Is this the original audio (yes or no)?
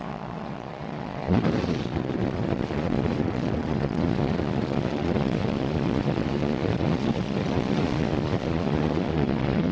no